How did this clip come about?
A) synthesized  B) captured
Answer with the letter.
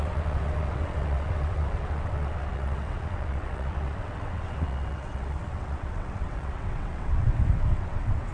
A